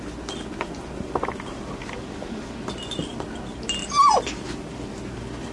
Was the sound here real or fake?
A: real